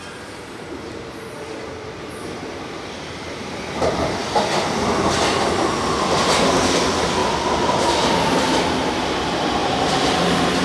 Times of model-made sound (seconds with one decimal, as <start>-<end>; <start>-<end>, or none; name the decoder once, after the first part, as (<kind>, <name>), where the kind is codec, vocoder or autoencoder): 7.2-8.1 (vocoder, BigVGAN v2)